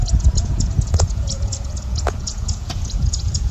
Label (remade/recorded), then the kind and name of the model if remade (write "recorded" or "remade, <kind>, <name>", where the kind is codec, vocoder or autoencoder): remade, vocoder, Vocos